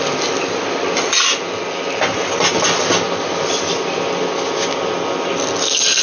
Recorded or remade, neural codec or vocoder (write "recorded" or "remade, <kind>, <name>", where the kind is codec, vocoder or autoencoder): recorded